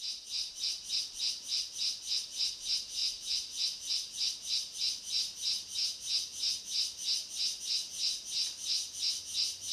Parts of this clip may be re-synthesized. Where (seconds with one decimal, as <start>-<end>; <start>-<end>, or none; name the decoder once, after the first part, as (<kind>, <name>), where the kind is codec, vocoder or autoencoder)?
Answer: none